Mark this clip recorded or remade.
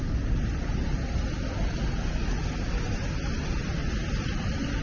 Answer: recorded